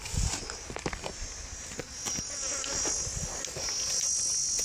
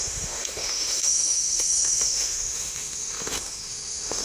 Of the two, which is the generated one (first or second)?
second